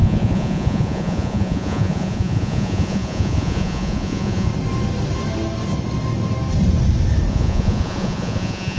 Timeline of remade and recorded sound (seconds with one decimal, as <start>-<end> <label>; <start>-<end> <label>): 0.0-4.5 remade; 4.5-7.3 recorded; 7.3-8.8 remade